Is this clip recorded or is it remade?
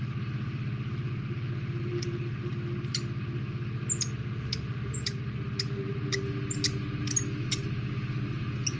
recorded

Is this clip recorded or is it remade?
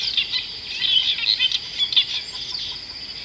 recorded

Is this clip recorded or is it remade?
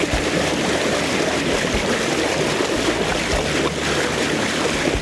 remade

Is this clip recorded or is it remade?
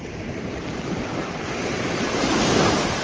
remade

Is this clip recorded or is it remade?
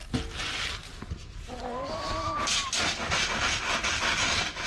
recorded